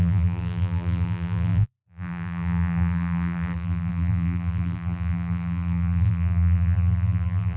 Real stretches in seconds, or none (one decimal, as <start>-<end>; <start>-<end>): none